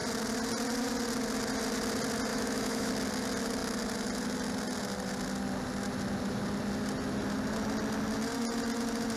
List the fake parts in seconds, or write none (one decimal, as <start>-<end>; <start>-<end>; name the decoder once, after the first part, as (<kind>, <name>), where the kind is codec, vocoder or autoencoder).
2.3-2.9 (autoencoder, DAC-VAE)